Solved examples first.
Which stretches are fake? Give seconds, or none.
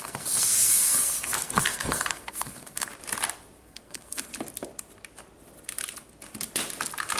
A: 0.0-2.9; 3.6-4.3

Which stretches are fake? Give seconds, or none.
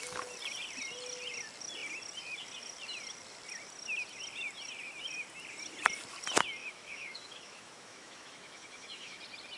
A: 6.6-9.2